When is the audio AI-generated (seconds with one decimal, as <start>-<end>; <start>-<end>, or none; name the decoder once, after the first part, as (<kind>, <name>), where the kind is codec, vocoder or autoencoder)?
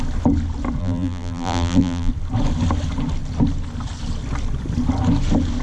0.8-2.1 (vocoder, BigVGAN v2)